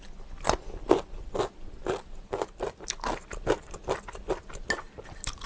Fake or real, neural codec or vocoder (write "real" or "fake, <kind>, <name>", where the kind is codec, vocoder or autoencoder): real